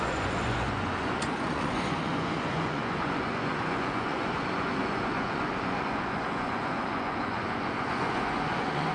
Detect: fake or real fake